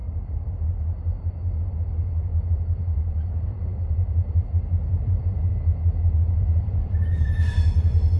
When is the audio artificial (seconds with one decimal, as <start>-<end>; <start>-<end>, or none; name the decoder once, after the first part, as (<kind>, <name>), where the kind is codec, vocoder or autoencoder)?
2.5-5.5 (vocoder, BigVGAN v2); 6.2-8.2